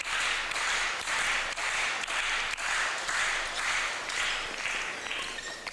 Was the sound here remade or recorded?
recorded